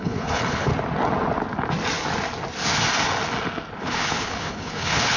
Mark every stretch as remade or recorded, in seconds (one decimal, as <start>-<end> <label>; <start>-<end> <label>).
0.0-0.7 remade; 0.7-3.8 recorded; 3.8-5.2 remade